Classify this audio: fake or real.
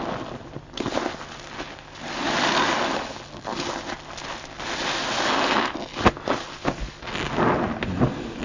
real